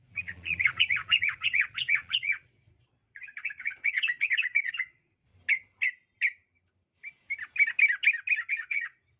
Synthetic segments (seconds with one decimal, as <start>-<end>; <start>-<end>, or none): 0.0-5.3; 8.5-9.2